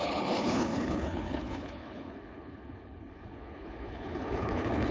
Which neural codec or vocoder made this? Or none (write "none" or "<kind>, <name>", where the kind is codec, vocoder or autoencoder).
codec, HILCodec